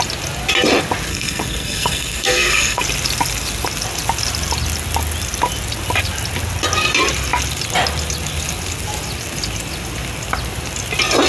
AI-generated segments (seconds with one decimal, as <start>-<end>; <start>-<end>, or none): 1.1-2.8